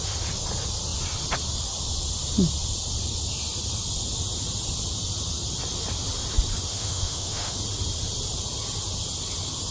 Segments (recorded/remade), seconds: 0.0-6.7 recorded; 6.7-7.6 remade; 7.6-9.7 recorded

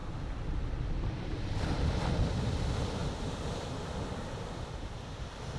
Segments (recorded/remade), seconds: 0.0-5.6 remade

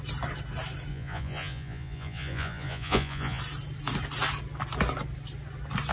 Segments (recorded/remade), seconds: 0.0-0.9 recorded; 0.9-3.4 remade; 3.4-5.9 recorded

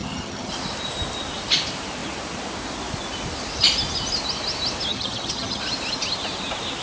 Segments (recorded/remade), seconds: 0.0-0.5 remade; 0.5-4.9 recorded; 4.9-5.6 remade; 5.6-6.8 recorded